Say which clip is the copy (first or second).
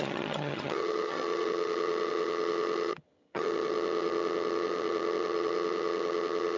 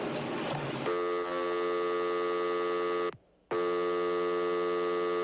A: first